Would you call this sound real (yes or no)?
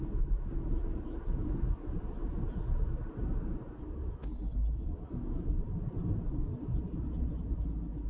yes